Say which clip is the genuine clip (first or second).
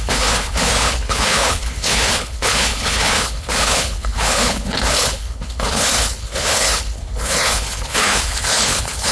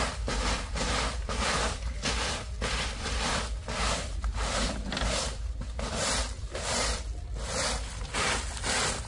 second